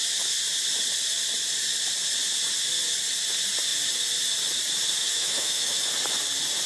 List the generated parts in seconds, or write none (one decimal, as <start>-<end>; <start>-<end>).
5.0-5.8